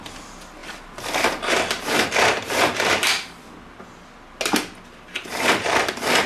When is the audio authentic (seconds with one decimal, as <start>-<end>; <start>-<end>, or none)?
0.0-0.6; 4.4-6.3